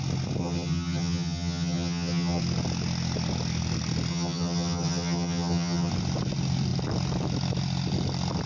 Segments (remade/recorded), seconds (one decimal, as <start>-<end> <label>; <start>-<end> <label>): 0.0-0.4 recorded; 0.4-2.4 remade; 2.4-4.1 recorded; 4.1-5.9 remade; 5.9-8.5 recorded